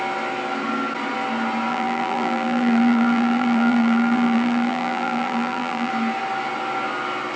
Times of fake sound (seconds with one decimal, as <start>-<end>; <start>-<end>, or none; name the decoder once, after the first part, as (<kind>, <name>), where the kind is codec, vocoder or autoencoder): 1.7-5.9 (vocoder, BigVGAN v2)